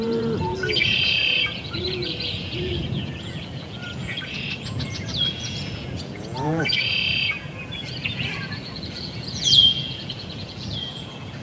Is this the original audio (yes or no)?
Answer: no